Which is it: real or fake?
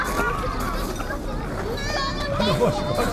real